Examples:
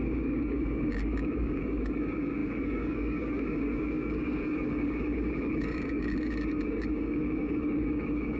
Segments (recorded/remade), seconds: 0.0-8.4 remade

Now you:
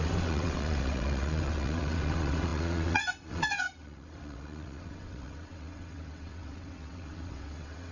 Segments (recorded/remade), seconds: 0.0-7.9 remade

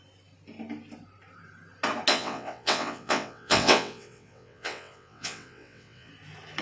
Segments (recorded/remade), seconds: 0.0-2.1 recorded; 2.1-6.1 remade; 6.1-6.6 recorded

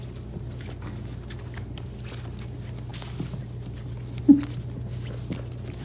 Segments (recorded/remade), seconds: 0.0-5.8 recorded